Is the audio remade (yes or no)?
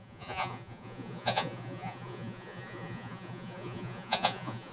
yes